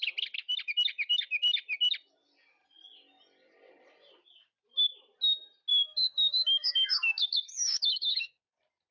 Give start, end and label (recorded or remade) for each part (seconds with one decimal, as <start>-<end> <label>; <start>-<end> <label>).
0.0-5.7 recorded; 5.7-8.4 remade; 8.4-8.9 recorded